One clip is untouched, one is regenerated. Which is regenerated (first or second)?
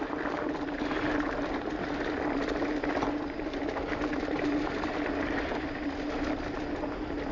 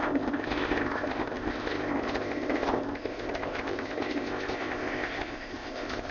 second